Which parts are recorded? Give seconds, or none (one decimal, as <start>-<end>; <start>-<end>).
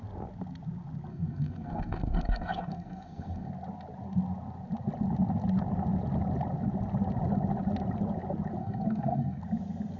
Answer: 0.0-1.1; 3.5-8.6; 9.4-10.0